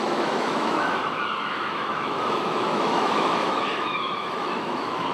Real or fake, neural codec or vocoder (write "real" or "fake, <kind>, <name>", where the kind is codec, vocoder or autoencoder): fake, autoencoder, DAC-VAE